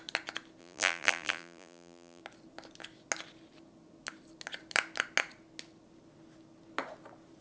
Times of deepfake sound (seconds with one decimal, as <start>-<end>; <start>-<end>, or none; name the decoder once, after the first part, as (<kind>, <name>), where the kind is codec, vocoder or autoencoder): 0.6-2.2 (vocoder, BigVGAN v2)